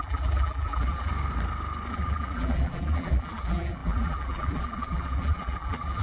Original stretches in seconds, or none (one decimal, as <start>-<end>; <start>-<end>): 1.1-1.9